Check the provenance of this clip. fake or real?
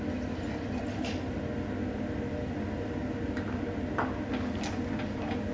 real